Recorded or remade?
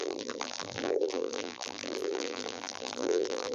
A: remade